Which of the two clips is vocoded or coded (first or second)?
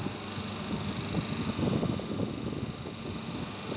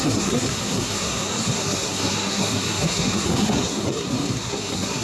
second